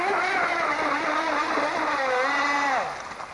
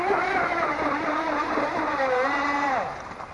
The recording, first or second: first